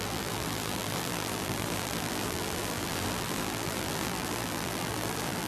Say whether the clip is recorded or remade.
remade